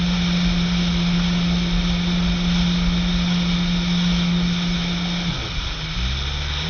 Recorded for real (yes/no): yes